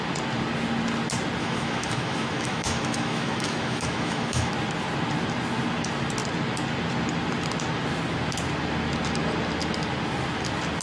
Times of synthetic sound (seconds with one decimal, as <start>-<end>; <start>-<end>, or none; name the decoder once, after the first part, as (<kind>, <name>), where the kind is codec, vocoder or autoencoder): 1.4-4.5 (autoencoder, DAC-VAE)